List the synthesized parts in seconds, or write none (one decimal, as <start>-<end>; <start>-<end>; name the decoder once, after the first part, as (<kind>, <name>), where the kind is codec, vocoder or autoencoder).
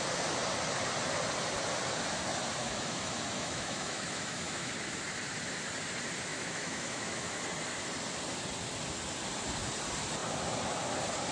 2.6-4.7 (autoencoder, DAC-VAE); 6.3-7.4